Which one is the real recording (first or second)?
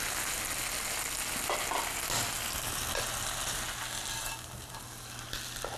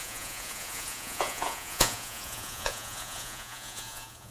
first